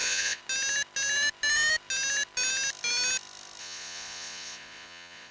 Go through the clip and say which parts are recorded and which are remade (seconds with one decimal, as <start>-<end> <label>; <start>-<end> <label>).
0.0-0.4 remade; 0.4-3.6 recorded; 3.6-5.3 remade